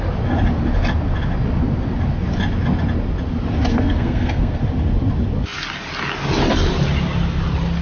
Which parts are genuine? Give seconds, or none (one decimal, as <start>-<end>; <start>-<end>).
0.0-3.7; 4.6-7.8